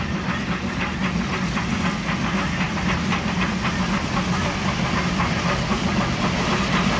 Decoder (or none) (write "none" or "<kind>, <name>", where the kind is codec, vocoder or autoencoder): none